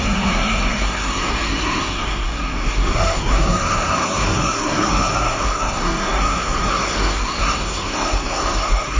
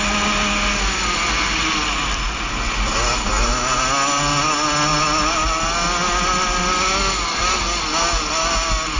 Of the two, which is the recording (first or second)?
second